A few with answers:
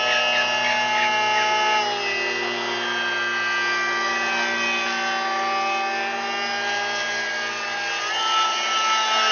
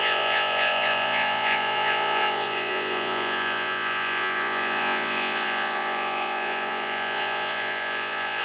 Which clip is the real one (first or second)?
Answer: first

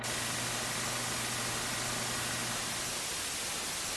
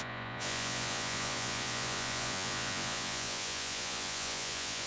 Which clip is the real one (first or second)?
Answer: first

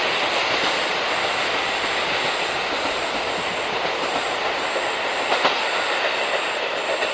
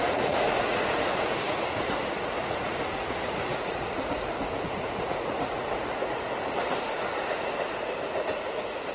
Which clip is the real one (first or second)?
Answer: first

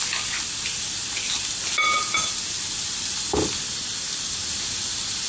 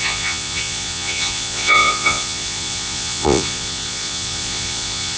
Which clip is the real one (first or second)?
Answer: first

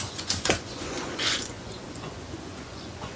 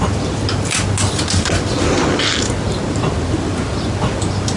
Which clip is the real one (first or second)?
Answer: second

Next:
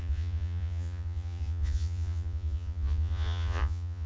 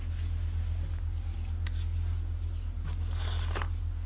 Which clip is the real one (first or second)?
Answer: second